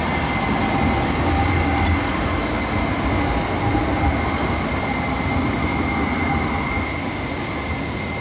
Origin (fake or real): real